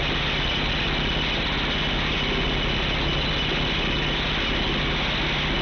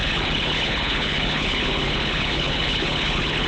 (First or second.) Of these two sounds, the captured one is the first